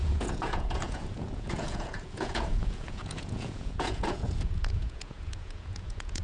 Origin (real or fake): fake